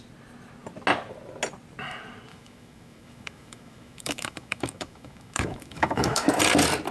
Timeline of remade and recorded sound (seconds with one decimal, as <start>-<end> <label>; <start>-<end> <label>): 0.0-2.3 recorded; 2.3-6.4 remade; 6.4-6.9 recorded